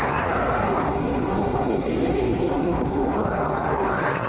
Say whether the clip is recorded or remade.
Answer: remade